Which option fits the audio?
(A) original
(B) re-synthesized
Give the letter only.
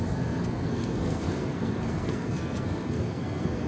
B